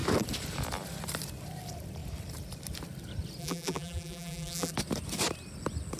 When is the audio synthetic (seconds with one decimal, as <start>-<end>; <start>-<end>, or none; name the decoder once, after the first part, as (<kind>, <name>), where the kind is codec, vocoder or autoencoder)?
3.4-4.7 (vocoder, BigVGAN v2)